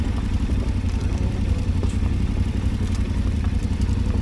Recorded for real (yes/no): no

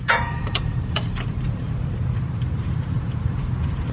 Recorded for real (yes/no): no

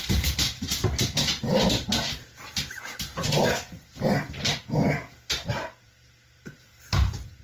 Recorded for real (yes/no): no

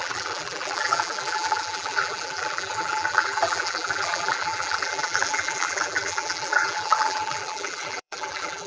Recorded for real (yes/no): no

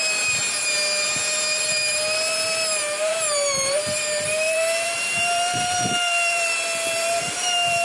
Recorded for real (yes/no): no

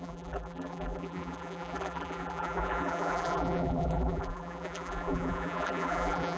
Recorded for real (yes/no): no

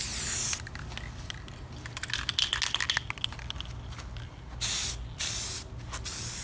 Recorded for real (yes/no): yes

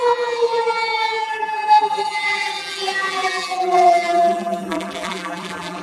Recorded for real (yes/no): no